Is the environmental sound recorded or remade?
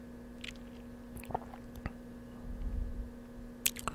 recorded